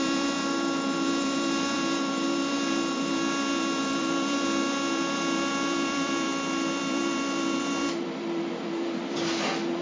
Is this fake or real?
fake